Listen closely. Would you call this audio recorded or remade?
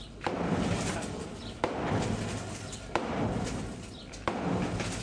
remade